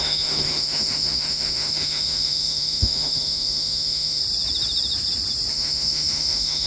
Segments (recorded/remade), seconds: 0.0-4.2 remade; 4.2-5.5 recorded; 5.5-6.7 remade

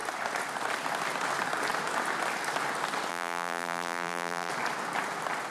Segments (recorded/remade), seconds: 0.0-3.1 recorded; 3.1-4.5 remade; 4.5-5.5 recorded

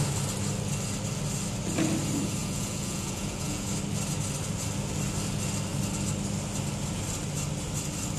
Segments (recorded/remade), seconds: 0.0-2.4 recorded; 2.4-3.7 remade; 3.7-8.2 recorded

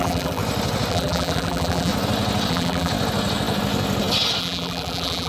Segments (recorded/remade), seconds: 0.0-0.4 remade; 0.4-0.9 recorded; 0.9-1.9 remade; 1.9-2.5 recorded; 2.5-2.9 remade; 2.9-4.4 recorded; 4.4-5.3 remade

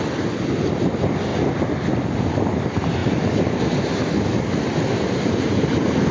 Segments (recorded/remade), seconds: 0.0-6.1 recorded

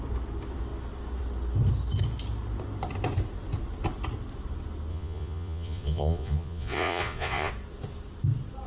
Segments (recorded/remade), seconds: 0.0-4.9 recorded; 4.9-7.5 remade; 7.5-8.7 recorded

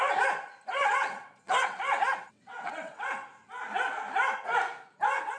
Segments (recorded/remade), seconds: 0.0-0.7 recorded; 0.7-1.9 remade; 1.9-2.3 recorded; 2.3-3.1 remade; 3.1-5.4 recorded

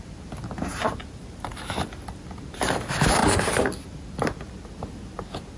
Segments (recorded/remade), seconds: 0.0-0.7 recorded; 0.7-1.8 remade; 1.8-5.6 recorded